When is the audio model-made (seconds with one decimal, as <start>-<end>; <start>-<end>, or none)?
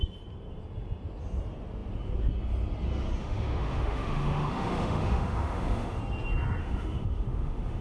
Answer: 3.2-6.0; 6.6-7.8